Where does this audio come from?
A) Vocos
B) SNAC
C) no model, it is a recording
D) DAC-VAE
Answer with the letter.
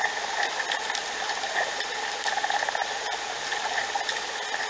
C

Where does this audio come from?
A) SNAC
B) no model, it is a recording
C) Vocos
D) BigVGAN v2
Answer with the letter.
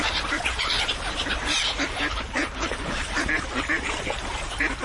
D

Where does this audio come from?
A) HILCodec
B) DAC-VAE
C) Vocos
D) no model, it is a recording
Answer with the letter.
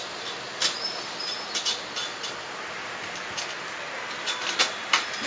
D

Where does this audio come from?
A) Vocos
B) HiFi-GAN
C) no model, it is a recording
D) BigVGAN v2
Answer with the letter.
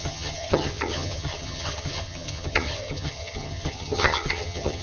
B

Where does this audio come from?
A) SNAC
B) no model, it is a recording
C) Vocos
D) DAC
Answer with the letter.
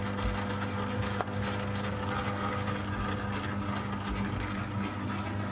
B